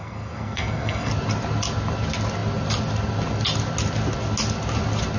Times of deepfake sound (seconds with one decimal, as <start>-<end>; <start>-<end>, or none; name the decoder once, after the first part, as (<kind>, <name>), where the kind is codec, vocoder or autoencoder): 0.0-1.1 (codec, SNAC)